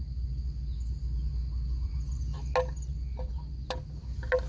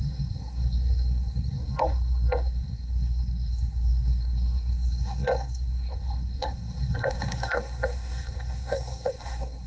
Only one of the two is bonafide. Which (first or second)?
first